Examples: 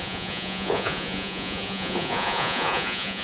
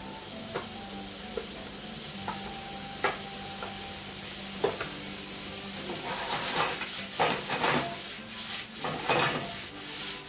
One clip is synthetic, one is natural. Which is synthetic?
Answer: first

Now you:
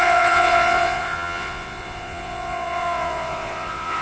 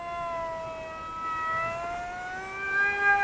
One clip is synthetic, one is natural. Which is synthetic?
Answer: first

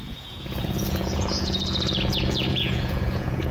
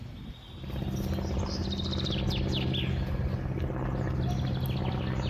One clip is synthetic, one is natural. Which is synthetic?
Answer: first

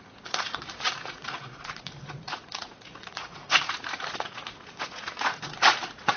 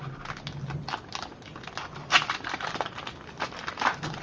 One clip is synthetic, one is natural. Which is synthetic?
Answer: first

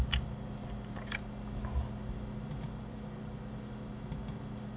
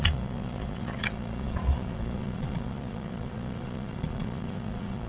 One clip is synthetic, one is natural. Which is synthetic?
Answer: second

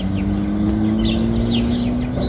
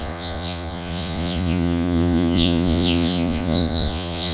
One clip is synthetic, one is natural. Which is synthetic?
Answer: second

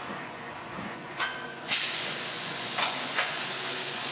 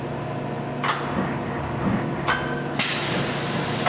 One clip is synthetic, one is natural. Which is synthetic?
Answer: first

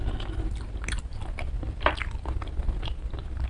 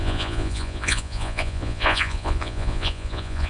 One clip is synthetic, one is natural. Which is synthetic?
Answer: second